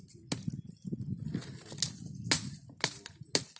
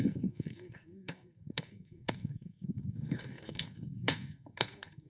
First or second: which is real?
first